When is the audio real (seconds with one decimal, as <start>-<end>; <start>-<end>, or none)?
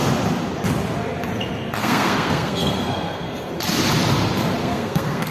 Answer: 0.0-1.8; 3.5-4.6